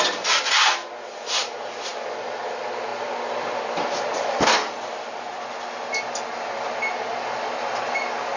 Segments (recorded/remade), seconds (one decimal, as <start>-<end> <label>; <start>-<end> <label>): 0.0-8.4 recorded